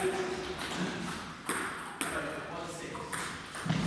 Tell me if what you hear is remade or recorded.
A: recorded